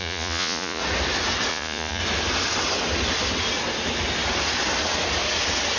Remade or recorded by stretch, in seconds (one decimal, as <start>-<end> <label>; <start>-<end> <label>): 0.0-0.8 remade; 0.8-1.5 recorded; 1.5-2.0 remade; 2.0-5.8 recorded